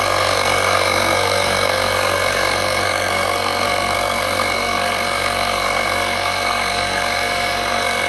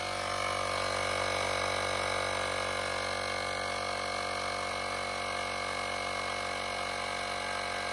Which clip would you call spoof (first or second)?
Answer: first